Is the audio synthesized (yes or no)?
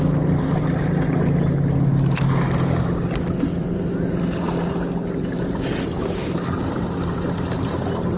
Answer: no